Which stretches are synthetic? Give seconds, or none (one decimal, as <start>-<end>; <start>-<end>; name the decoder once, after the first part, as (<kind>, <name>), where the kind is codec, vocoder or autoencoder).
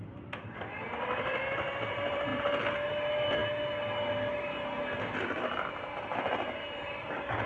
0.0-3.4 (vocoder, BigVGAN v2)